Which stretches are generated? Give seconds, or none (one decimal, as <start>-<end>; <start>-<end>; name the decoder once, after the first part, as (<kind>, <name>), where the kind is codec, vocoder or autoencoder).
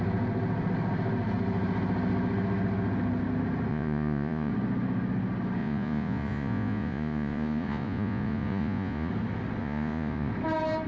3.7-4.5 (vocoder, Vocos); 5.6-9.1; 9.6-10.3